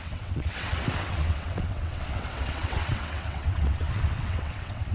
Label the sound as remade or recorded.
remade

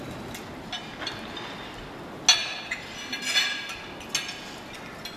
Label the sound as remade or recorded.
recorded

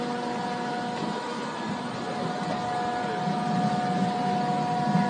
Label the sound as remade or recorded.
recorded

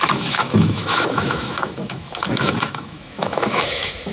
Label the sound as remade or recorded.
remade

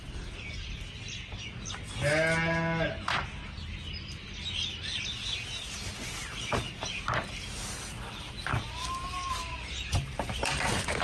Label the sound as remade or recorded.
recorded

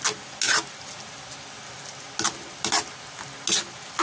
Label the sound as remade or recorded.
recorded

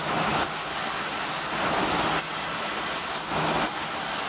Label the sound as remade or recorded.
recorded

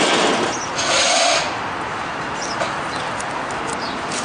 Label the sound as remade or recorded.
recorded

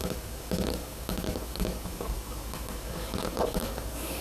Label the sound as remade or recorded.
remade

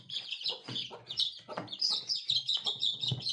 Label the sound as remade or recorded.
remade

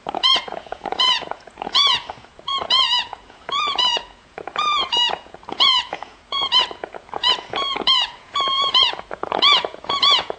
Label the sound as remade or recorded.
remade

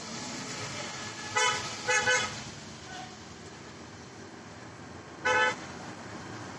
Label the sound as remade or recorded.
recorded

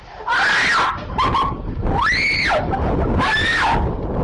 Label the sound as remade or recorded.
recorded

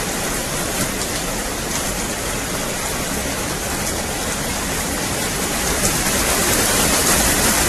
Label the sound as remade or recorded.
recorded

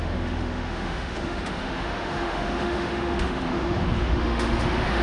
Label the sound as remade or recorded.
remade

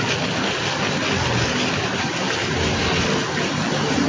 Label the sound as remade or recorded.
recorded